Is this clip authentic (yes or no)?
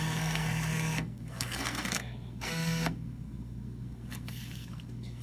no